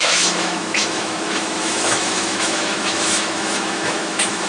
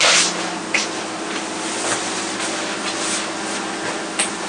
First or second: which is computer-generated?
first